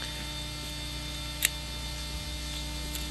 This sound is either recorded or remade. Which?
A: recorded